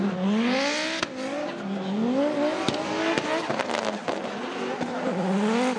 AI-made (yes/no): no